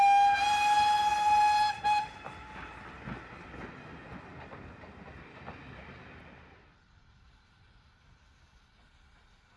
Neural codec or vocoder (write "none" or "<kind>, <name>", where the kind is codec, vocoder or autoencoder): none